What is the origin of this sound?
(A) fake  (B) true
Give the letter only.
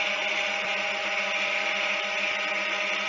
B